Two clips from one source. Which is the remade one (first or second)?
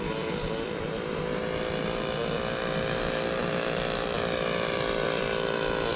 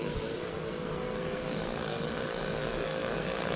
second